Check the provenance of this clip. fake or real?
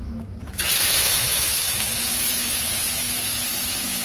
fake